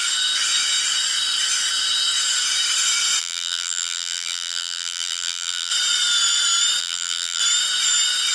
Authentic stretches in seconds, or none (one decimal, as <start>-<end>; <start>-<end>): 0.0-3.2; 5.7-6.8; 7.4-8.3